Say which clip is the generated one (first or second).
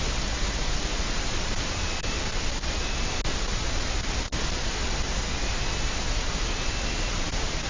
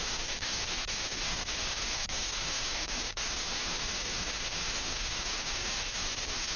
second